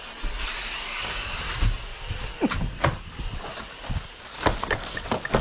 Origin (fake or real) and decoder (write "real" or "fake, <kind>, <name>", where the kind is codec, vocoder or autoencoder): real